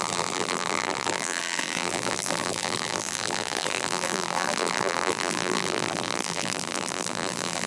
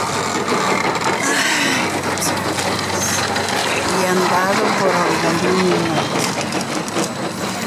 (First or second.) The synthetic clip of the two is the first